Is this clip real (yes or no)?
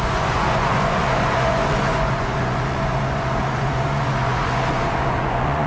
no